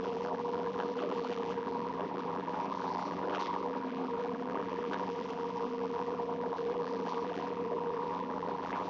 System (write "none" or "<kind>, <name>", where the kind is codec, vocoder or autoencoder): vocoder, BigVGAN v2